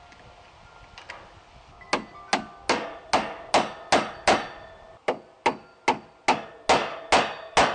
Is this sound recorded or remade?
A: recorded